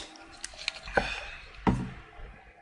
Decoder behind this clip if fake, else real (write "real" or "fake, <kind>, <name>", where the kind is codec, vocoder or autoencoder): real